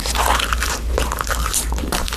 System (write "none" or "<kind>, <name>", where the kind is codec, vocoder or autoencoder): vocoder, BigVGAN v2